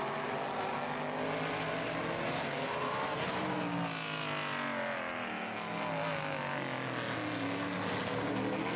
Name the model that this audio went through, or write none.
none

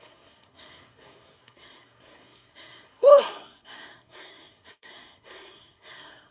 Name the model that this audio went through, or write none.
codec, SNAC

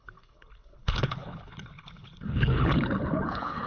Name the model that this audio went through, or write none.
codec, HILCodec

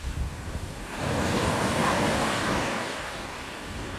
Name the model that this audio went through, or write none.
codec, DAC